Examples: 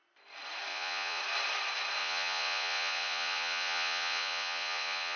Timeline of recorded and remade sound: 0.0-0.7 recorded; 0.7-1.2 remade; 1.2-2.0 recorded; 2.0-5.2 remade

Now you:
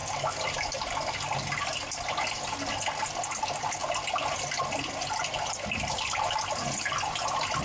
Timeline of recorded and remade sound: 0.0-7.6 recorded

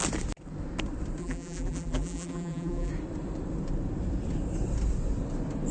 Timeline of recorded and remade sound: 0.0-1.2 recorded; 1.2-2.9 remade; 2.9-5.7 recorded

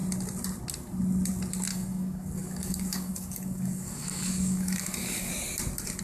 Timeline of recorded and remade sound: 0.0-1.7 recorded; 1.7-5.3 remade; 5.3-6.0 recorded

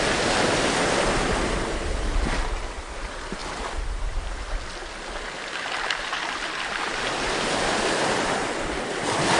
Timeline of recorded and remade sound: 0.0-9.4 recorded

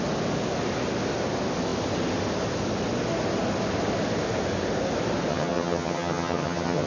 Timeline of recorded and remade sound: 0.0-5.3 recorded; 5.3-6.9 remade

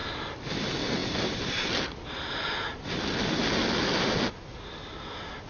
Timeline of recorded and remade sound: 0.0-5.5 recorded